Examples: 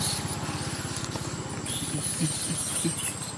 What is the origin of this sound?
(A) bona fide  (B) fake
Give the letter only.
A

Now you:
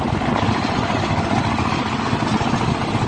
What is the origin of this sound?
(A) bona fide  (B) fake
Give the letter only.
A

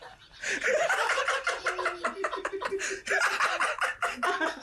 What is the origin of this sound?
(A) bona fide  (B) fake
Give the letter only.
A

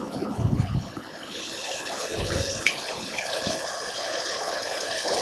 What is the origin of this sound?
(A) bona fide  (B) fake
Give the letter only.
B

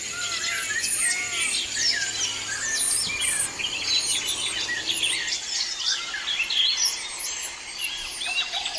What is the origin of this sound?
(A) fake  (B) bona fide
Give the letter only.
B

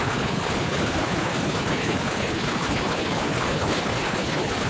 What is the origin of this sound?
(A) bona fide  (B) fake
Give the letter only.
B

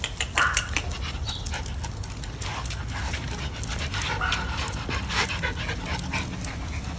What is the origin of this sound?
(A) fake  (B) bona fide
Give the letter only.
B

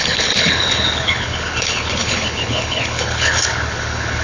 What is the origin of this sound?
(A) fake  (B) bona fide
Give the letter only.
A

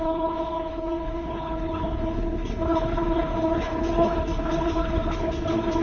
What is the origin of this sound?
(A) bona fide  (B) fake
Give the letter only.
B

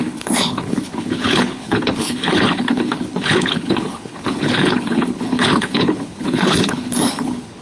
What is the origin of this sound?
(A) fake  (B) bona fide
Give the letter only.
A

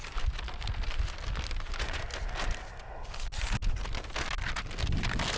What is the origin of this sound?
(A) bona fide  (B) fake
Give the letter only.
A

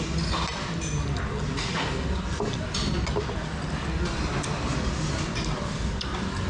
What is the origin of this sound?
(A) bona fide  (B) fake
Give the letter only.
A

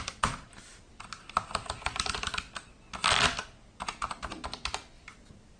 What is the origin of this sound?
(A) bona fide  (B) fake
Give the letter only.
A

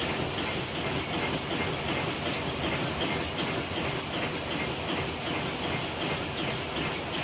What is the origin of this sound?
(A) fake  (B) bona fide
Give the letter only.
B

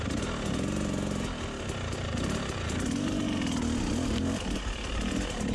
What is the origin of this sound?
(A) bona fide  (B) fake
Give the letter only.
A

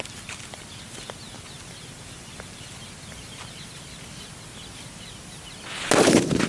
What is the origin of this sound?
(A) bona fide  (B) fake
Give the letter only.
A